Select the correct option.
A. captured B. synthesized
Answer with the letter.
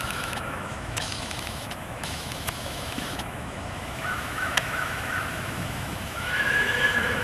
B